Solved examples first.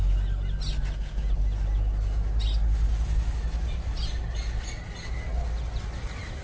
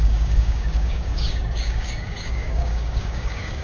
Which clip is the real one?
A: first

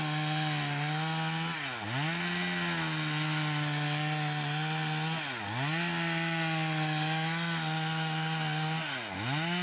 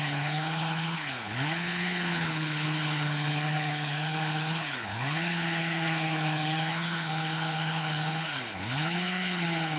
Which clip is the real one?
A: first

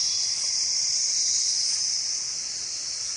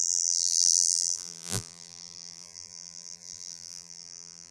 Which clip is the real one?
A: first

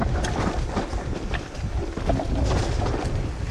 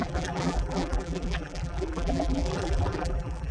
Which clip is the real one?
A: first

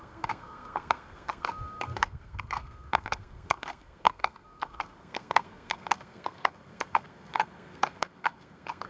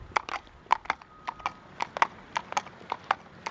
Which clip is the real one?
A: second